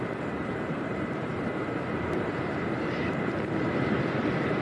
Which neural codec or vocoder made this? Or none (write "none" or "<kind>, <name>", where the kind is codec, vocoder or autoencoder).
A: vocoder, BigVGAN v2